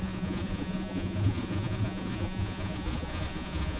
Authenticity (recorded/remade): remade